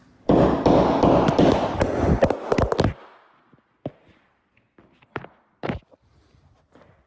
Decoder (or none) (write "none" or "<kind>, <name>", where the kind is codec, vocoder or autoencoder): none